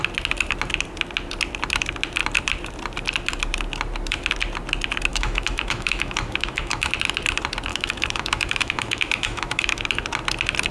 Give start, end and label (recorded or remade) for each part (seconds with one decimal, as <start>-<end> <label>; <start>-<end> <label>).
0.0-5.1 recorded; 5.1-6.9 remade; 6.9-7.7 recorded; 7.7-9.8 remade; 9.8-10.7 recorded